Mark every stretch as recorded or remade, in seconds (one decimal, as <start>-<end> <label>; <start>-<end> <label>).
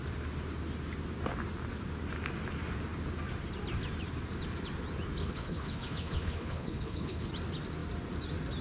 0.0-5.2 recorded; 5.2-7.3 remade; 7.3-8.6 recorded